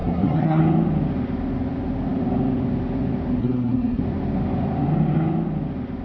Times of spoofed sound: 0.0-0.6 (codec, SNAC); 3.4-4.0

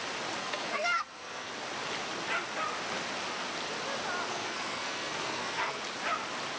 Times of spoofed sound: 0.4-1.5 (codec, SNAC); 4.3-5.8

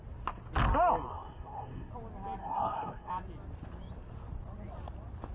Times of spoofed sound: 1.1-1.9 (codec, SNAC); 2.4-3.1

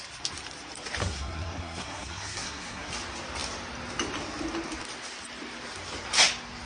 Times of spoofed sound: 1.0-2.9 (codec, SNAC)

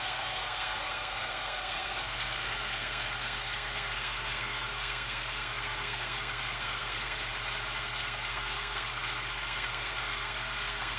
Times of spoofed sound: 0.0-7.3 (codec, SNAC); 7.8-11.0

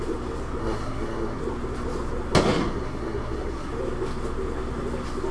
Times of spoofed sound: 0.6-1.4 (codec, SNAC); 2.6-3.7

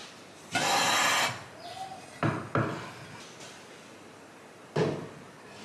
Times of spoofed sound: none

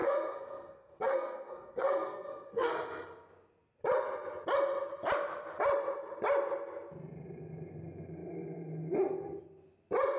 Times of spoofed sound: 0.0-2.7 (codec, SNAC)